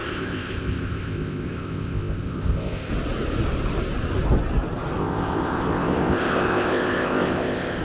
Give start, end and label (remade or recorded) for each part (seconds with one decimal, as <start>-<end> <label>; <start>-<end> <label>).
0.0-2.9 remade; 2.9-5.0 recorded; 5.0-7.8 remade